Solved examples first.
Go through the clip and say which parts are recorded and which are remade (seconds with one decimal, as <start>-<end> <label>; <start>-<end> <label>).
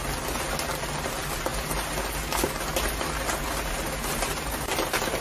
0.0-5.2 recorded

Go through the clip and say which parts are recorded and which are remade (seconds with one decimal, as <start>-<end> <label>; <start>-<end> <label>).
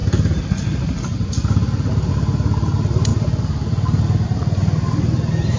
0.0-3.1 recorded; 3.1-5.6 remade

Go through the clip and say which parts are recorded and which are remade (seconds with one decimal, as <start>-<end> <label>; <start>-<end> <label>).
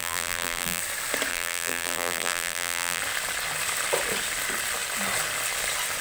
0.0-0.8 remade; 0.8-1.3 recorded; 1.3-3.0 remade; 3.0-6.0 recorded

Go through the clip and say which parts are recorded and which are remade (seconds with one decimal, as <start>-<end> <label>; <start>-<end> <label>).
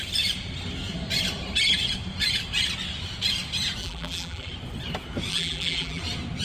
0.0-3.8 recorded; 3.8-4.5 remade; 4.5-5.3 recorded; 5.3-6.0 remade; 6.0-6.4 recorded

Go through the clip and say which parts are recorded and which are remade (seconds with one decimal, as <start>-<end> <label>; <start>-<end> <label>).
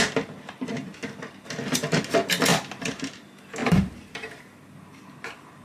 0.0-3.6 recorded; 3.6-4.4 remade; 4.4-5.6 recorded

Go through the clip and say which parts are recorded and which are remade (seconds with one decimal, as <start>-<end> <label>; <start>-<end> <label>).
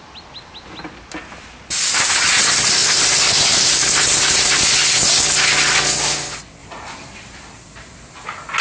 0.0-2.8 recorded; 2.8-3.7 remade; 3.7-6.6 recorded; 6.6-8.6 remade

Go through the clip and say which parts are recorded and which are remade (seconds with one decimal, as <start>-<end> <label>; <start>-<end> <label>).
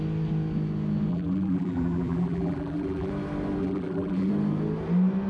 0.0-1.1 recorded; 1.1-3.1 remade; 3.1-3.6 recorded; 3.6-4.3 remade; 4.3-5.3 recorded